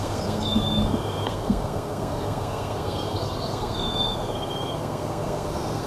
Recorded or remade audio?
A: remade